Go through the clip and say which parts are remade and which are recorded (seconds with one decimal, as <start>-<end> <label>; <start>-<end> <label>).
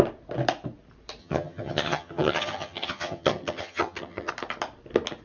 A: 0.0-1.2 recorded; 1.2-4.3 remade; 4.3-5.2 recorded